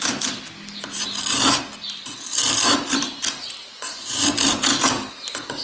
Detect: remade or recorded recorded